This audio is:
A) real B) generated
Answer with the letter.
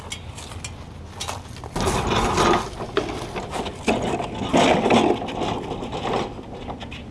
A